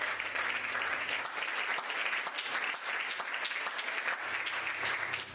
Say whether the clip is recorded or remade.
recorded